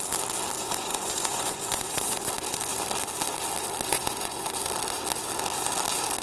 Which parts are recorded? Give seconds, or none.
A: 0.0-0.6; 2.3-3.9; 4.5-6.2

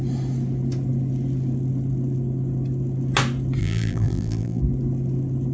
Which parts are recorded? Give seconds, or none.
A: 0.0-3.6; 4.6-5.5

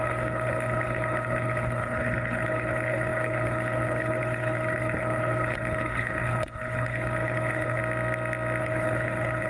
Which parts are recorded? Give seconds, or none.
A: 7.8-8.6

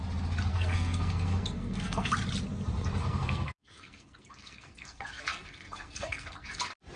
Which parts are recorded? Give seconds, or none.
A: 0.0-0.5; 2.1-3.0; 6.6-7.0